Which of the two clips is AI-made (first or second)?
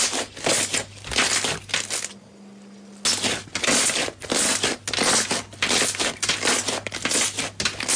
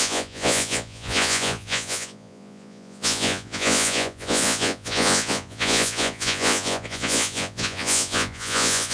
second